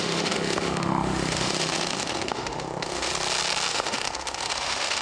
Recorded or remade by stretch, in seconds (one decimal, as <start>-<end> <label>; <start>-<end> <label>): 0.0-3.1 remade; 3.1-3.7 recorded; 3.7-5.0 remade